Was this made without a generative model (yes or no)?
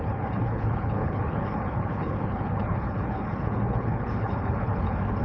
no